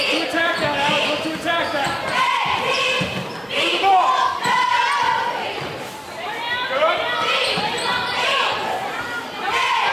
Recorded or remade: recorded